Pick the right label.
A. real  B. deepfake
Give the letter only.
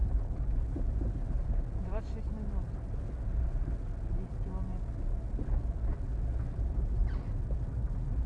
A